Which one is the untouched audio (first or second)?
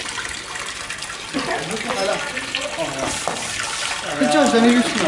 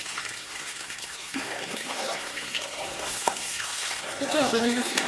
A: first